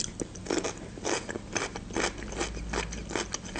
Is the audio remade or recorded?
recorded